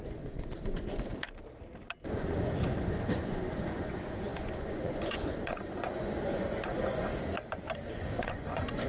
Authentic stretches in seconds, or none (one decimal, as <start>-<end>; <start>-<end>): 1.1-2.0; 7.1-7.9